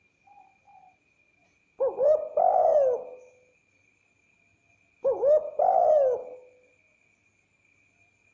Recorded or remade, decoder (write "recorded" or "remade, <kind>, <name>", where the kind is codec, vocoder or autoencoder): recorded